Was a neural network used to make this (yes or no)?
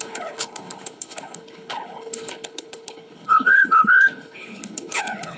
yes